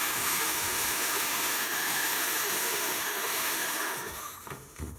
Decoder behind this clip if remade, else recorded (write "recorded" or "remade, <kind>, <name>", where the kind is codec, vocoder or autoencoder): remade, autoencoder, DAC-VAE